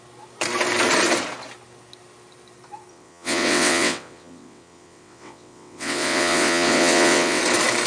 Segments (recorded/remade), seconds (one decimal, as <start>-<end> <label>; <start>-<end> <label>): 0.0-2.9 recorded; 2.9-7.4 remade; 7.4-7.9 recorded